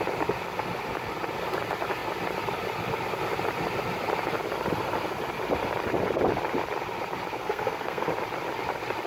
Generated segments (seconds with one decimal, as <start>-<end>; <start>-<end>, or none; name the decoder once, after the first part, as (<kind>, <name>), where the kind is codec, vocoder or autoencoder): 7.4-8.1 (codec, SNAC)